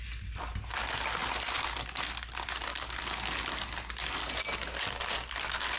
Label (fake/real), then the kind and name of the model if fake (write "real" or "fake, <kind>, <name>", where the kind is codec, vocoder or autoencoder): real